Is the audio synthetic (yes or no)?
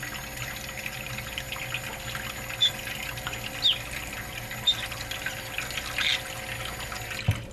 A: no